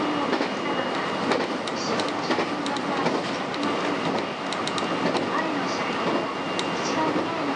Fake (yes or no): no